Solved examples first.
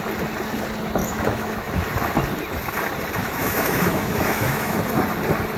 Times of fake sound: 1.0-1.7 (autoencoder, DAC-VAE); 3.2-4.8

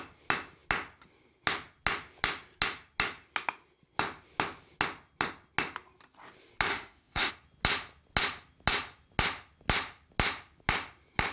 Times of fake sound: 6.7-7.3 (autoencoder, DAC-VAE)

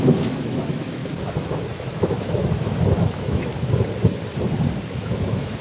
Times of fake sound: 0.0-1.0 (autoencoder, DAC-VAE); 1.9-3.5; 4.9-5.6

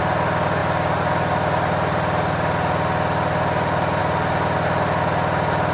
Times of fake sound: none